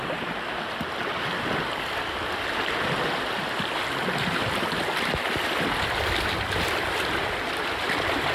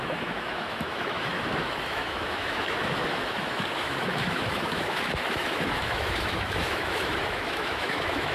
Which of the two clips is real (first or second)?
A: first